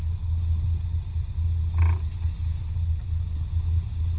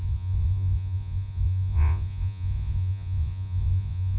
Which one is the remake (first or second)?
second